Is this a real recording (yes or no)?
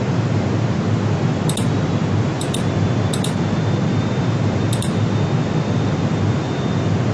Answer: yes